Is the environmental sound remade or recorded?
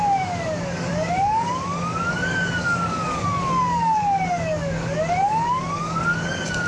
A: remade